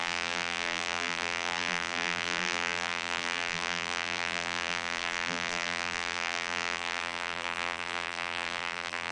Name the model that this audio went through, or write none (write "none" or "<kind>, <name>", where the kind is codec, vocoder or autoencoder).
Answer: vocoder, BigVGAN v2